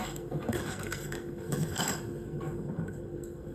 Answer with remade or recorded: remade